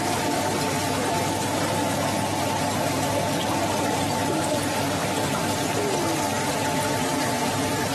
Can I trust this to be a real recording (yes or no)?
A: yes